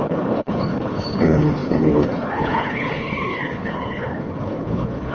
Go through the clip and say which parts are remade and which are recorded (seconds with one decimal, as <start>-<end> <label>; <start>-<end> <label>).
0.0-5.1 remade